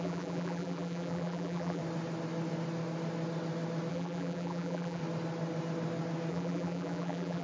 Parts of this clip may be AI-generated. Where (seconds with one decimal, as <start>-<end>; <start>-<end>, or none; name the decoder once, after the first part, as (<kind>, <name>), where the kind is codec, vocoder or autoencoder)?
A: 0.0-1.8 (vocoder, BigVGAN v2); 3.9-5.0; 6.3-7.4